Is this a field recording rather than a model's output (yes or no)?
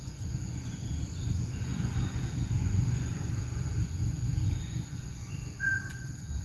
no